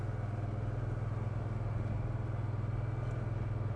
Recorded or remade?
recorded